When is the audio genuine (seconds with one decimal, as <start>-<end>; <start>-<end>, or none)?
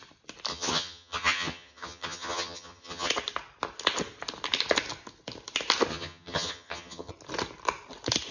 0.0-0.5; 3.1-5.9; 7.1-8.3